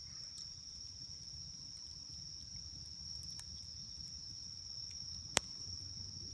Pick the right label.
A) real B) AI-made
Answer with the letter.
B